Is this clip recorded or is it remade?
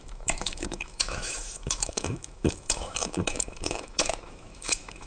remade